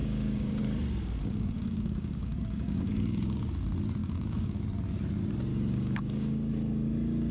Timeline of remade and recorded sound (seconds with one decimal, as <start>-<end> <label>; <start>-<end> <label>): 0.0-0.6 remade; 0.6-1.2 recorded; 1.2-3.4 remade; 3.4-4.0 recorded; 4.0-4.6 remade; 4.6-5.5 recorded; 5.5-6.5 remade; 6.5-7.3 recorded